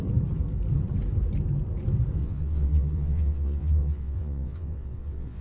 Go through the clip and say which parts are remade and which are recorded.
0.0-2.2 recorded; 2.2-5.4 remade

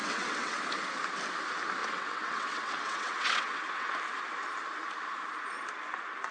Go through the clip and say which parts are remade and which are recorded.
0.0-0.6 remade; 0.6-1.8 recorded; 1.8-3.9 remade; 3.9-6.3 recorded

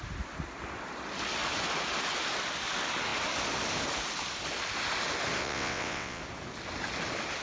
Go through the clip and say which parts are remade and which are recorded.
0.0-5.4 recorded; 5.4-6.2 remade; 6.2-7.4 recorded